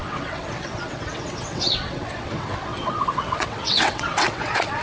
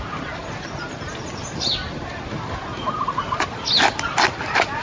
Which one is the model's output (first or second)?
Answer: first